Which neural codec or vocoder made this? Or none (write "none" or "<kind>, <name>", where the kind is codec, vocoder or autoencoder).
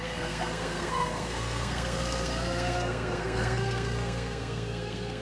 codec, SNAC